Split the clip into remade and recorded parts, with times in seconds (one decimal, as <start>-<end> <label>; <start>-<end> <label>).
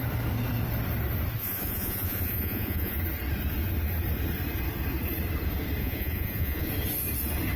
0.0-1.4 recorded; 1.4-3.0 remade; 3.0-5.8 recorded; 5.8-6.7 remade; 6.7-7.6 recorded